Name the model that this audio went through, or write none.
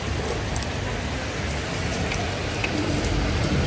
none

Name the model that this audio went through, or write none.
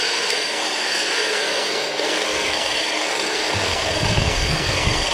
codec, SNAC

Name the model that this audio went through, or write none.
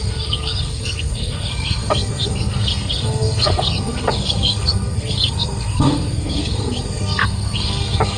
codec, SNAC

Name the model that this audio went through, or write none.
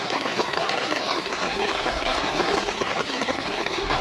codec, SNAC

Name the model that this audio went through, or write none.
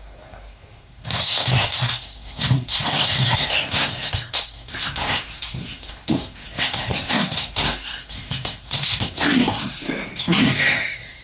codec, SNAC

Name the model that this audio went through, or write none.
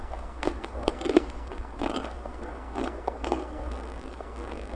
codec, SNAC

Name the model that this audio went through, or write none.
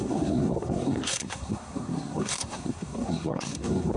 codec, SNAC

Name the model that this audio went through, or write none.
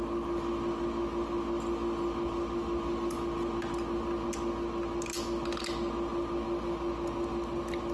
none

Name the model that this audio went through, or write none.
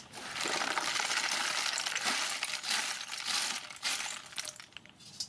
none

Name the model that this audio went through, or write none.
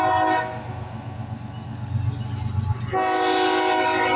none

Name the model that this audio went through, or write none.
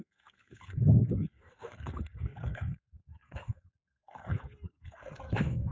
codec, SNAC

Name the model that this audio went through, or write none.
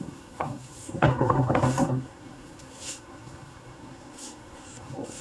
codec, SNAC